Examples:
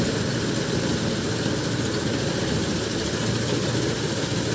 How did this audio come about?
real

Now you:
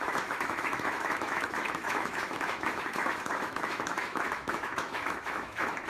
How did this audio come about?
fake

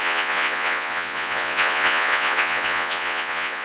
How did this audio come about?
fake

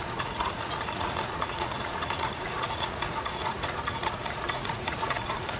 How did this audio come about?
fake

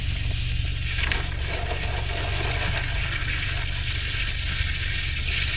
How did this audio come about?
real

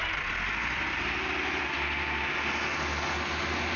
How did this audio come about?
real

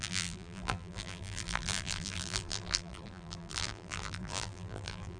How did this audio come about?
fake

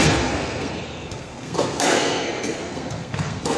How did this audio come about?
fake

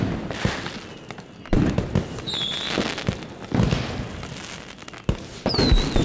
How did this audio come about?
real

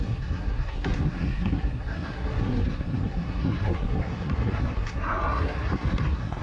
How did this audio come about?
fake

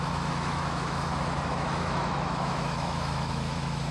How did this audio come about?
fake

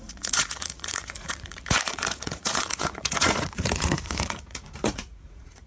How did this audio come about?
fake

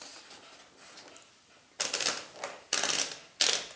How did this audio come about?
real